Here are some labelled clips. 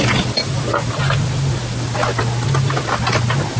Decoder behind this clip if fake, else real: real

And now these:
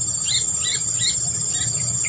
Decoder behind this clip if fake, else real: real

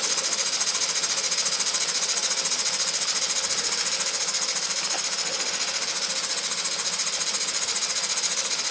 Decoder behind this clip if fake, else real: real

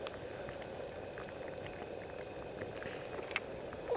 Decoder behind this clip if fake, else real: real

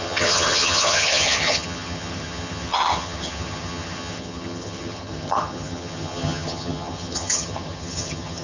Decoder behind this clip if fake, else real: fake, vocoder, HiFi-GAN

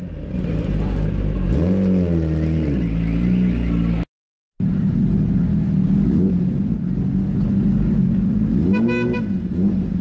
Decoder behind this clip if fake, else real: real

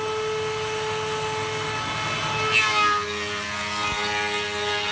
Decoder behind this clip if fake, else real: real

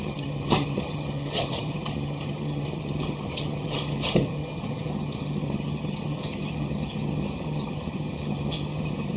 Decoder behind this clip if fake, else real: fake, vocoder, HiFi-GAN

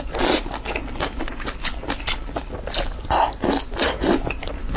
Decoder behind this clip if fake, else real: real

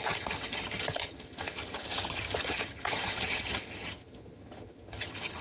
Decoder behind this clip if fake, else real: fake, vocoder, HiFi-GAN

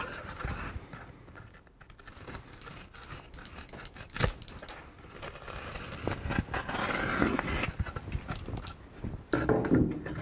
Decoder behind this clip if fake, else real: real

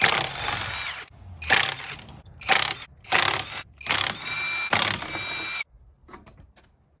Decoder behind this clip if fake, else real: real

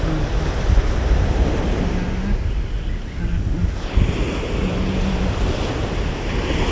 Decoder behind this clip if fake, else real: real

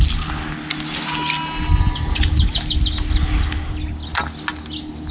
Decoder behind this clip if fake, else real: real